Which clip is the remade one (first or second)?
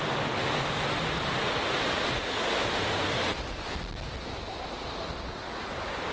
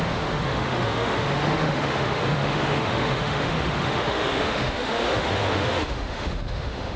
second